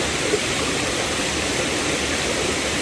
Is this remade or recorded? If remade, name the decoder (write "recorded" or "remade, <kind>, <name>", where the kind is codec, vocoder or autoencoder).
recorded